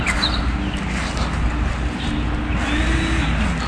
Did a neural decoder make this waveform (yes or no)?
no